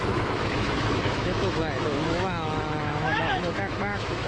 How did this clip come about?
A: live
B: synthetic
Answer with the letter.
B